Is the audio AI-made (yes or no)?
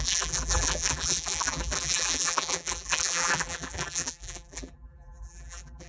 yes